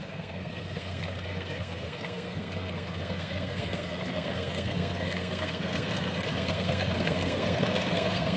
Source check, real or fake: fake